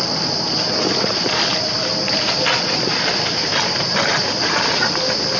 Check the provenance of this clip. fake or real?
real